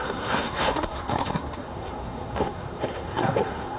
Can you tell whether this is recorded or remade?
remade